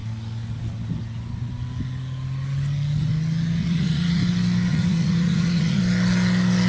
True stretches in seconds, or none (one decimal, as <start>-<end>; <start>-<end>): 0.0-3.6; 4.2-4.7; 5.8-6.7